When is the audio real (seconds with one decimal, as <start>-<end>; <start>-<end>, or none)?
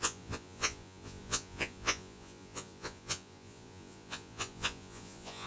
none